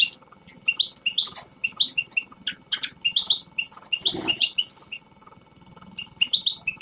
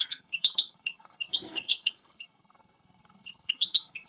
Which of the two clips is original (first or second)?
first